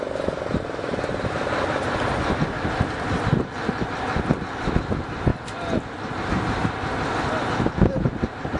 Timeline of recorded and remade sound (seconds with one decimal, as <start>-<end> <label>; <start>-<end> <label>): 0.0-8.6 recorded